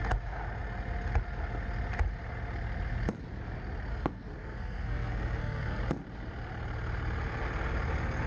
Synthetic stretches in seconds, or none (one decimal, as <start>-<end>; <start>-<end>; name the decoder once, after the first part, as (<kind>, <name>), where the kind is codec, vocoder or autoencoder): 3.9-5.8 (codec, SNAC)